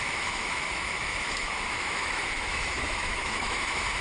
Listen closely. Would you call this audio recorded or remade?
remade